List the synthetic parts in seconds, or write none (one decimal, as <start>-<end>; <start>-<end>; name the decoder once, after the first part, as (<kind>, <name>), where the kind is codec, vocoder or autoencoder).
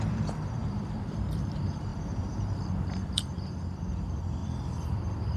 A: 0.0-4.4 (vocoder, BigVGAN v2)